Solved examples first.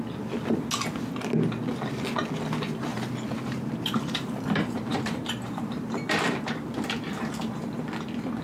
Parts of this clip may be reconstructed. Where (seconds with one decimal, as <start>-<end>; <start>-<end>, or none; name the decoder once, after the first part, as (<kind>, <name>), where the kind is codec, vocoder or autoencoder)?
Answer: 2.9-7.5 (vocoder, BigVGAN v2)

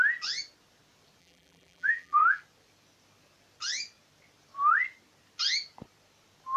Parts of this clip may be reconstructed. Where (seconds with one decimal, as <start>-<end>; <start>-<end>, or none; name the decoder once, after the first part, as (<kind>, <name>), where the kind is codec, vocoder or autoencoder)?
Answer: 1.2-2.4 (vocoder, BigVGAN v2)

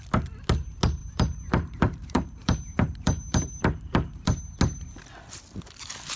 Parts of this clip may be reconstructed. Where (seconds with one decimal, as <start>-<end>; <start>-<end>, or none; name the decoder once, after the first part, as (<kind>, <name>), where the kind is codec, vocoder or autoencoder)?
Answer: 1.0-4.4 (vocoder, BigVGAN v2)

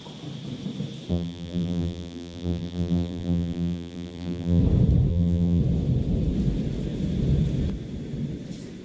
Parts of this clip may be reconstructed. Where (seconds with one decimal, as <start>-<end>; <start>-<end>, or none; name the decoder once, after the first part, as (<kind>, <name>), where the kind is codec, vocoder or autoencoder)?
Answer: 1.1-4.6 (vocoder, BigVGAN v2); 5.1-5.6